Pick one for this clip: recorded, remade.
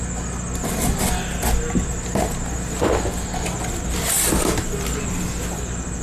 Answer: recorded